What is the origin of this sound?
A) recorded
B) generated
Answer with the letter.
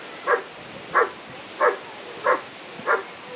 A